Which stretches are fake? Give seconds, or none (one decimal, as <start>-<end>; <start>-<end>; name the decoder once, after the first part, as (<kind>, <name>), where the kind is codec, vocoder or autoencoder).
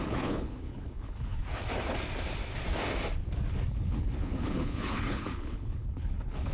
0.0-1.4 (codec, HILCodec); 3.7-6.5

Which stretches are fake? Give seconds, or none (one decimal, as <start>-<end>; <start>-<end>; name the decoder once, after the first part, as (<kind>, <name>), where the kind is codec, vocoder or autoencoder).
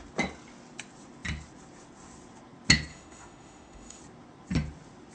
2.9-4.0 (autoencoder, DAC-VAE)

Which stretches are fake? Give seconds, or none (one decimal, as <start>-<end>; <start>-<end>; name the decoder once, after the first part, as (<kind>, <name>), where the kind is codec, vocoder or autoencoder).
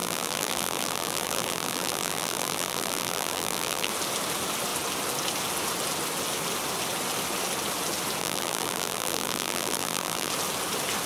0.0-3.9 (vocoder, BigVGAN v2); 8.2-10.3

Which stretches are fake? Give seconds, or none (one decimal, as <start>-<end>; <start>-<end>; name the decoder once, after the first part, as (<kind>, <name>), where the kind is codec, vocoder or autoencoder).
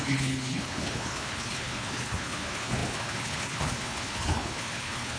0.0-5.2 (codec, HILCodec)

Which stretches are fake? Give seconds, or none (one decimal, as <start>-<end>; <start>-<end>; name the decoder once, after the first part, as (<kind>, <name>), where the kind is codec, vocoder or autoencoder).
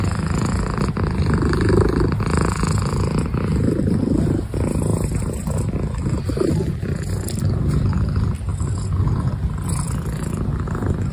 none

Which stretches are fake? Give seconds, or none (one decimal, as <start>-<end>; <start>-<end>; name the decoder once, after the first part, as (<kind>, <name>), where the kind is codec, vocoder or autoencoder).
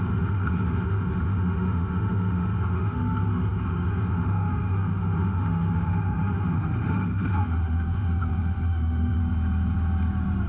0.0-9.2 (autoencoder, DAC-VAE)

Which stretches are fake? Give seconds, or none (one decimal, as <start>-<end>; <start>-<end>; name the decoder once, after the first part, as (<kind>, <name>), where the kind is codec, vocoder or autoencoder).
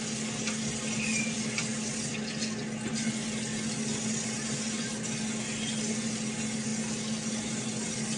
none